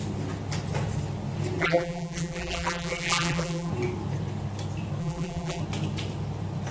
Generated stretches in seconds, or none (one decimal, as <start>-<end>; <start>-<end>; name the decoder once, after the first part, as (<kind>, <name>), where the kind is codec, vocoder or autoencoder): 1.6-3.7 (vocoder, BigVGAN v2); 5.0-5.6